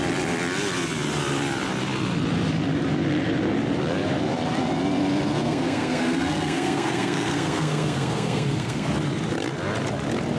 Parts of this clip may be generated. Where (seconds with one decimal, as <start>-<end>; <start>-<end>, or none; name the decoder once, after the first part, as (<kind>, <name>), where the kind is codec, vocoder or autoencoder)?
5.4-8.9 (codec, SNAC)